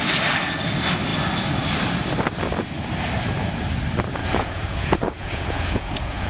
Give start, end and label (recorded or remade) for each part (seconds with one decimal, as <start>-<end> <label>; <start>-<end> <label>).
0.0-4.2 recorded; 4.2-6.3 remade